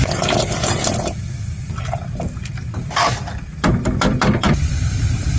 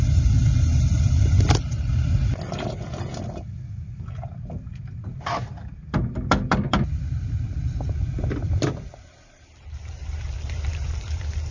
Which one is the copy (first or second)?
first